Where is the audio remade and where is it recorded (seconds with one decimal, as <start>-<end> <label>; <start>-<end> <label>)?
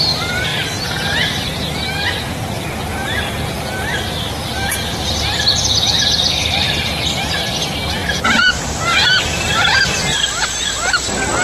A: 0.0-0.5 recorded; 0.5-1.5 remade; 1.5-2.9 recorded; 2.9-7.6 remade; 7.6-11.4 recorded